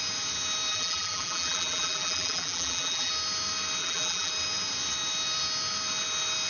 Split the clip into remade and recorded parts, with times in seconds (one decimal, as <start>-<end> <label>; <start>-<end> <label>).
0.0-0.7 recorded; 0.7-3.1 remade; 3.1-3.8 recorded; 3.8-4.3 remade; 4.3-6.5 recorded

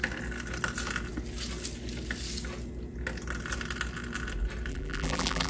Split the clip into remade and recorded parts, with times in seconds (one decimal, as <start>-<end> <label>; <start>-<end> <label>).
0.0-4.7 recorded; 4.7-5.5 remade

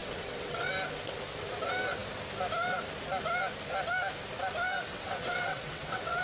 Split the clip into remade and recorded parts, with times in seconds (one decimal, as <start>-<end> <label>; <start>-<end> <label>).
0.0-0.7 remade; 0.7-4.9 recorded; 4.9-6.2 remade

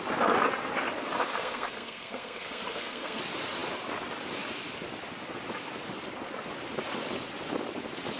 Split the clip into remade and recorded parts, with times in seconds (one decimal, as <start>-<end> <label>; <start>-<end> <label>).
0.0-1.4 recorded; 1.4-3.2 remade; 3.2-8.2 recorded

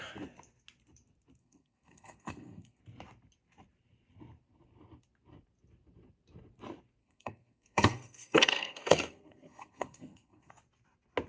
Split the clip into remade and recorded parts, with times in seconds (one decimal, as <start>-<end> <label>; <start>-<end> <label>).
0.0-1.4 recorded; 1.4-2.8 remade; 2.8-7.0 recorded; 7.0-10.5 remade; 10.5-11.3 recorded

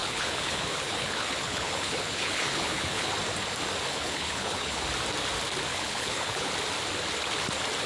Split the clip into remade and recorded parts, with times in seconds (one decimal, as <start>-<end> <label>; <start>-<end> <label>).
0.0-3.1 remade; 3.1-3.9 recorded; 3.9-4.8 remade; 4.8-5.7 recorded; 5.7-6.5 remade; 6.5-7.9 recorded

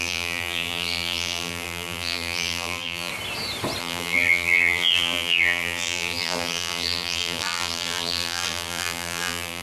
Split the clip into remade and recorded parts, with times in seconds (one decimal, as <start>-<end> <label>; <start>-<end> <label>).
0.0-3.1 remade; 3.1-3.8 recorded; 3.8-9.6 remade

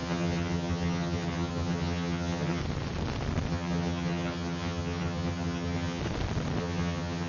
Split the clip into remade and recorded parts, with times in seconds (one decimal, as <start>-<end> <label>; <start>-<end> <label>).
0.0-2.6 remade; 2.6-3.5 recorded; 3.5-6.0 remade; 6.0-6.6 recorded; 6.6-7.3 remade